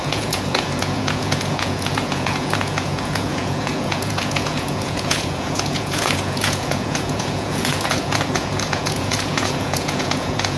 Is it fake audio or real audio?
fake